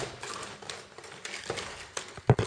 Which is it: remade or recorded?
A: recorded